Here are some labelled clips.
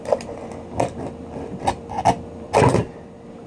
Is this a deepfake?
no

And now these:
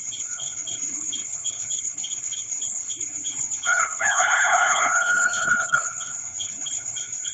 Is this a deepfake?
yes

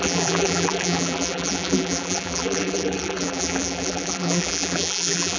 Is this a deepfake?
yes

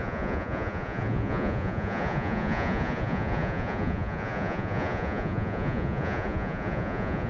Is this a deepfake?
yes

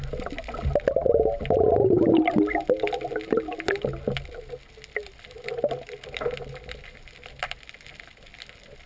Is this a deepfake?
no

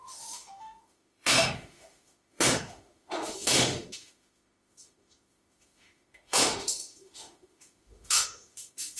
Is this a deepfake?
yes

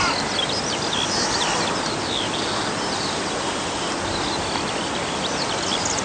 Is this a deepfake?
no